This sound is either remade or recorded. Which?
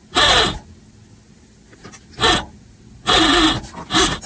recorded